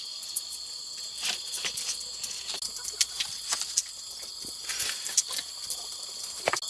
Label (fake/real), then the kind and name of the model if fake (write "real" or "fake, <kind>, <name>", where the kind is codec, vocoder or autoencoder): real